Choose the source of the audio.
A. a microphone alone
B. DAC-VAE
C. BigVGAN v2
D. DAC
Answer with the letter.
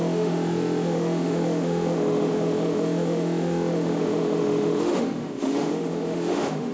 B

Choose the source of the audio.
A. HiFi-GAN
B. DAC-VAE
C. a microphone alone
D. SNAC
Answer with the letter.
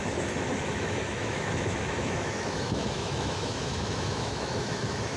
B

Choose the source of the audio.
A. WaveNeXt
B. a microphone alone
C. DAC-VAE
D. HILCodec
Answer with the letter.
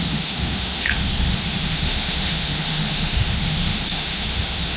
C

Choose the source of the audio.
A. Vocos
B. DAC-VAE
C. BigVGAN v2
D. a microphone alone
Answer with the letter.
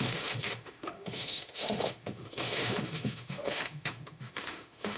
B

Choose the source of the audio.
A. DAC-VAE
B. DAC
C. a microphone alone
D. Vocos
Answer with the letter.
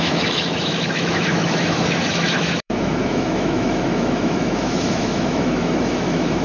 A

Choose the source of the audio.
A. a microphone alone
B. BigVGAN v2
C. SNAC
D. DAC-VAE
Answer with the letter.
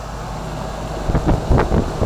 A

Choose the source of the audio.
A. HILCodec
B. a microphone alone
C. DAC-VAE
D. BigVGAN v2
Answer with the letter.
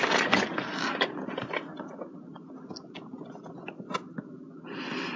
B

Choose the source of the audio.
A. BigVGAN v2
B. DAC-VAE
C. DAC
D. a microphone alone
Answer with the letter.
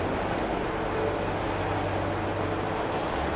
D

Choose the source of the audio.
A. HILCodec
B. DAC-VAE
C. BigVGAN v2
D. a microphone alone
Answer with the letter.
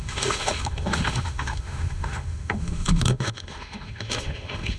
B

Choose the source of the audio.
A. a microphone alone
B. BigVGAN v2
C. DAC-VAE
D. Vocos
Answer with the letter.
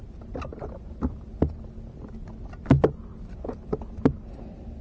A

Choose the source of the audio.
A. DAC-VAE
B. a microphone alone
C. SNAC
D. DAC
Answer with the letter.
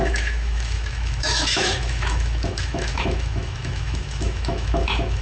A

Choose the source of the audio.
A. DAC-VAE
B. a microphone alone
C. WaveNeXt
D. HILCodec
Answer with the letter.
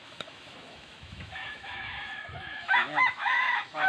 A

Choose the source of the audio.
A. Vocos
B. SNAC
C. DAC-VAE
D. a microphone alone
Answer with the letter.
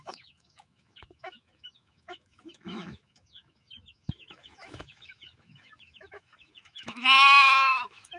C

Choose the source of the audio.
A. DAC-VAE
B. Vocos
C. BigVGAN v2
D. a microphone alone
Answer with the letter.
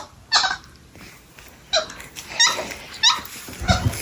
D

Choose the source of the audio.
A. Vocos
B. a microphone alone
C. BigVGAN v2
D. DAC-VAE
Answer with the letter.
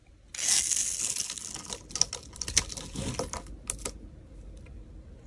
B